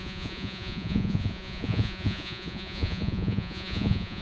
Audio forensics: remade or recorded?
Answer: remade